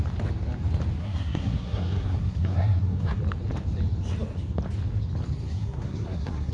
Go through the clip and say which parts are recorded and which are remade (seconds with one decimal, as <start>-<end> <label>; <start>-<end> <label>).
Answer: 0.0-1.0 recorded; 1.0-3.2 remade; 3.2-5.5 recorded; 5.5-6.5 remade